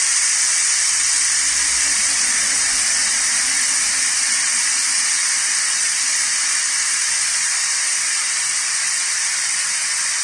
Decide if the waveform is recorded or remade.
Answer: remade